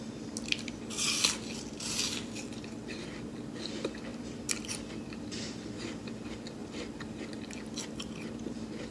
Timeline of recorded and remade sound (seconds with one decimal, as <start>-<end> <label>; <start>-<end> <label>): 0.0-8.9 recorded